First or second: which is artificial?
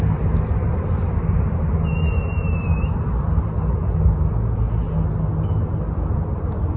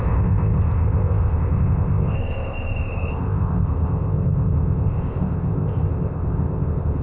second